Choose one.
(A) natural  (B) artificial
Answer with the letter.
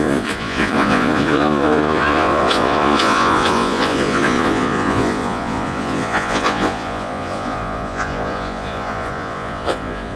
B